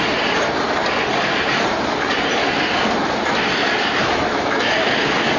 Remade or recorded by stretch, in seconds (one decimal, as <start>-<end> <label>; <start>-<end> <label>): 0.0-4.0 recorded; 4.0-4.7 remade; 4.7-5.4 recorded